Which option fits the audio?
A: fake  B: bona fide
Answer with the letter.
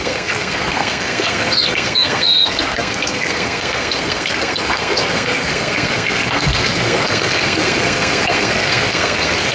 A